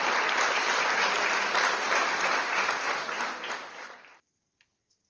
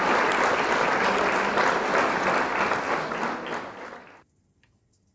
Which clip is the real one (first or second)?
second